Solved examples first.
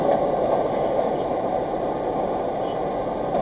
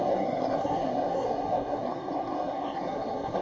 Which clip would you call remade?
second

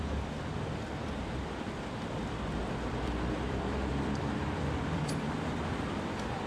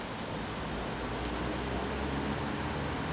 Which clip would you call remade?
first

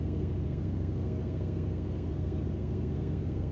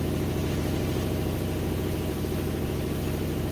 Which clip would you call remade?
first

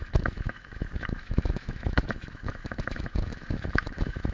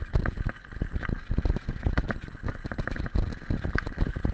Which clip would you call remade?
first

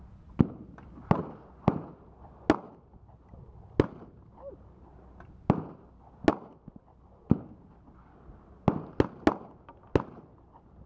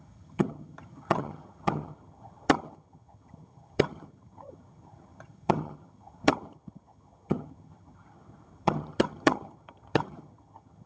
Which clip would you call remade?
second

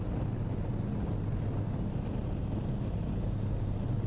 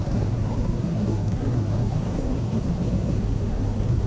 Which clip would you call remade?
second